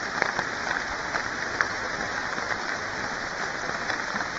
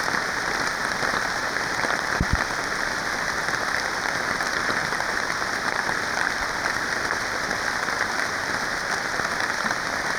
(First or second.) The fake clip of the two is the second